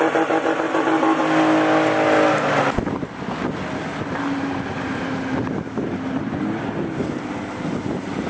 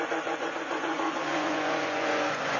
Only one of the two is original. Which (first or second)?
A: first